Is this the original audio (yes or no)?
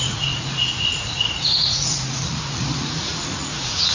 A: no